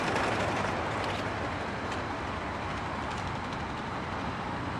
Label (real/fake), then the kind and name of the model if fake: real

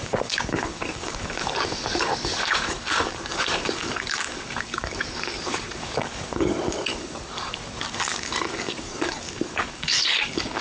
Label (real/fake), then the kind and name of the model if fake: fake, codec, DAC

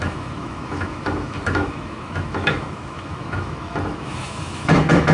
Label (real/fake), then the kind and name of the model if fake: fake, autoencoder, DAC-VAE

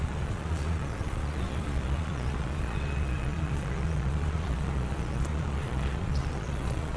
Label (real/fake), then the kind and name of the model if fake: fake, vocoder, Vocos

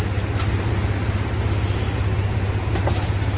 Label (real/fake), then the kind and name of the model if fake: real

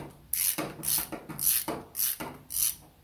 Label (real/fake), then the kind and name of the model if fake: real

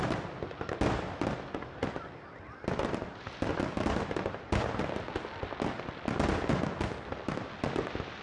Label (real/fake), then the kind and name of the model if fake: real